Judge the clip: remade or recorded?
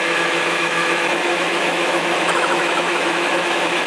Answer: remade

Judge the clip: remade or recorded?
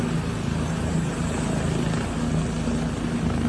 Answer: recorded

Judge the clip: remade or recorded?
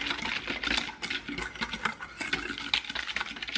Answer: recorded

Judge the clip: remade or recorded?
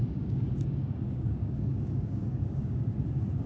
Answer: remade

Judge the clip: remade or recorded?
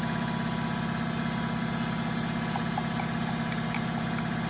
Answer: recorded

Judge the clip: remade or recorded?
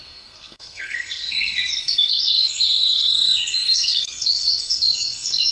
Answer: remade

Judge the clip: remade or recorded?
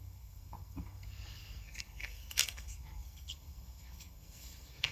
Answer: remade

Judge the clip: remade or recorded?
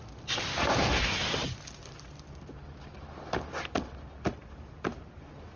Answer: recorded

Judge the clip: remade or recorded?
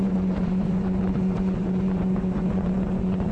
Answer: remade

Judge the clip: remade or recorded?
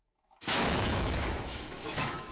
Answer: remade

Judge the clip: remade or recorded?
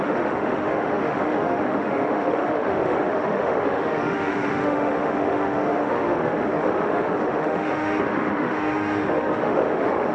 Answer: remade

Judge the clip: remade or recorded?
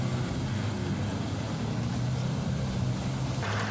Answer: recorded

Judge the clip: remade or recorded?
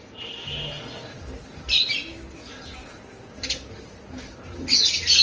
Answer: recorded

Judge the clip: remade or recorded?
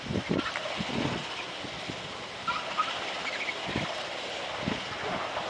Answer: recorded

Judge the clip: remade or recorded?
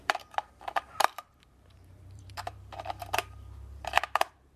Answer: remade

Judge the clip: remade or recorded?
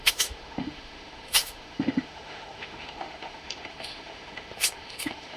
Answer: remade